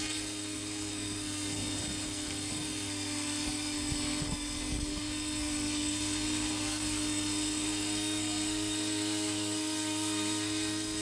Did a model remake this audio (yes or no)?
yes